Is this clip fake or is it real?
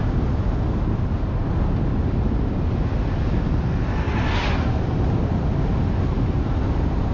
real